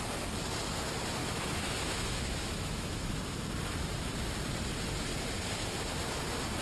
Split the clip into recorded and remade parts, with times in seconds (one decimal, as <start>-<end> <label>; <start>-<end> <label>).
0.0-1.2 recorded; 1.2-3.2 remade; 3.2-6.6 recorded